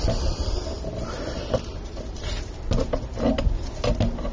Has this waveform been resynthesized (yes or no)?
no